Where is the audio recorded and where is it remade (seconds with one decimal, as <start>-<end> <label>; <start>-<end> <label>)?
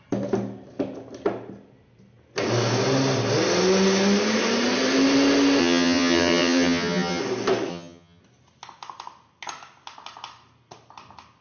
0.0-5.6 recorded; 5.6-7.2 remade; 7.2-7.7 recorded; 7.7-8.2 remade; 8.2-11.4 recorded